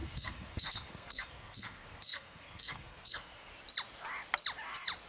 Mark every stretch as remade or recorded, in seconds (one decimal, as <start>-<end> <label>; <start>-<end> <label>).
0.0-3.5 remade; 3.5-5.1 recorded